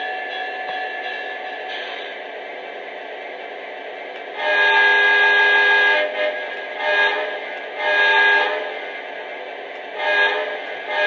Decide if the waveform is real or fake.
real